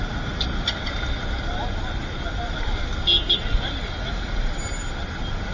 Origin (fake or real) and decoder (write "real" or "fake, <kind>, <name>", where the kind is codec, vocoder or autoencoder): real